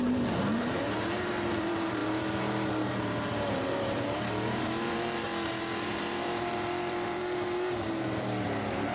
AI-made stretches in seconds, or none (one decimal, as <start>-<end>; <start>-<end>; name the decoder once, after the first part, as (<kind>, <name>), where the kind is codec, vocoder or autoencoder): 0.0-5.3 (vocoder, BigVGAN v2); 5.9-8.9